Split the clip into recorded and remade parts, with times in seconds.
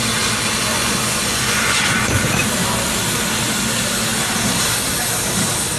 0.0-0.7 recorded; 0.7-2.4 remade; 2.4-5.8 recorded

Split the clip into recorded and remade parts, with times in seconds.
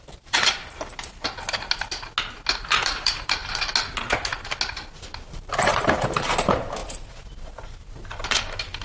0.0-0.6 remade; 0.6-2.8 recorded; 2.8-3.4 remade; 3.4-5.3 recorded; 5.3-6.8 remade; 6.8-8.8 recorded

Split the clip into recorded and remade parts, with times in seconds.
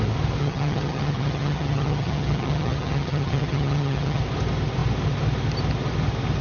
0.0-0.4 recorded; 0.4-4.2 remade; 4.2-6.4 recorded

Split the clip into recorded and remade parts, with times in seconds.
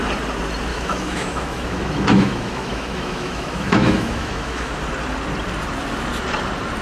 0.0-0.7 recorded; 0.7-4.8 remade; 4.8-6.8 recorded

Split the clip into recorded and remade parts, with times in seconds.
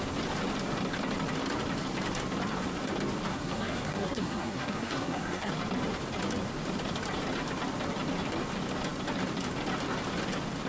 0.0-3.3 recorded; 3.3-5.5 remade; 5.5-10.7 recorded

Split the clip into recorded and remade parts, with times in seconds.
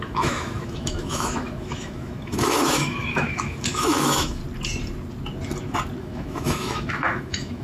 0.0-4.4 remade; 4.4-6.0 recorded; 6.0-7.6 remade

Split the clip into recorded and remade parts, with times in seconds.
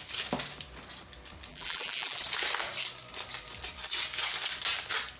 0.0-1.5 recorded; 1.5-2.2 remade; 2.2-5.2 recorded